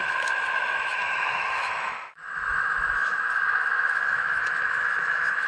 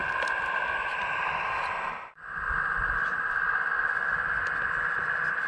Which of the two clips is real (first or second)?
second